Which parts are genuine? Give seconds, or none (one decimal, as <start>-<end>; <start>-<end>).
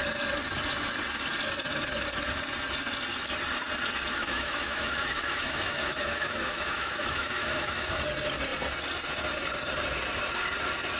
0.0-4.1; 8.0-11.0